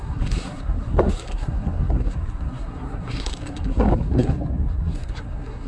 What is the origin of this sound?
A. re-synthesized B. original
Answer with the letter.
A